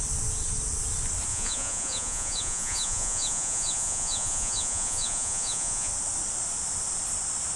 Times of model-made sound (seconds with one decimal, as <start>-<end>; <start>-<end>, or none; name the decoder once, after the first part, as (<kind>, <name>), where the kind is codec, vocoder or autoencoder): 1.3-5.9 (vocoder, Vocos)